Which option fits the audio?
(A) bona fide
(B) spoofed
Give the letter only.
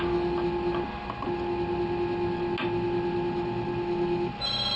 A